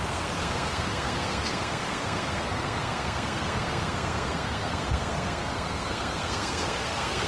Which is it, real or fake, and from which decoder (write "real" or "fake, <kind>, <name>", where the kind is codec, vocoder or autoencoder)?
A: fake, codec, SNAC